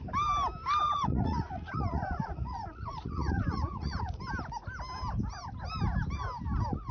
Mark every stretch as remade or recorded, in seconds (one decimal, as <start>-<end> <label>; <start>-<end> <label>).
0.0-0.8 recorded; 0.8-4.2 remade; 4.2-6.9 recorded